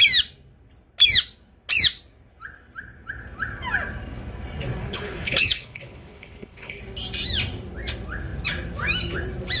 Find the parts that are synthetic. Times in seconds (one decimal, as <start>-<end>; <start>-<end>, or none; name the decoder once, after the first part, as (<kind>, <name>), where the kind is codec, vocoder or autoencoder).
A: 4.8-6.8 (codec, HILCodec)